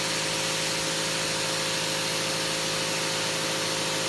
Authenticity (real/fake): real